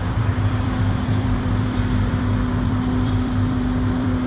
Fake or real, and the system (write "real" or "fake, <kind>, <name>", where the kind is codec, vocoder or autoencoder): fake, vocoder, BigVGAN v2